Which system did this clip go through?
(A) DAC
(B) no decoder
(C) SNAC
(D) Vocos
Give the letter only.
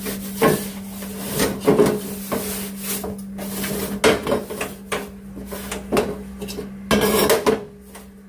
B